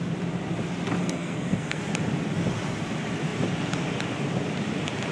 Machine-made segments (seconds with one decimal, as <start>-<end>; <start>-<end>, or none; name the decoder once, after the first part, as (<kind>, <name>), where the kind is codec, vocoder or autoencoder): 1.0-1.8 (codec, SNAC)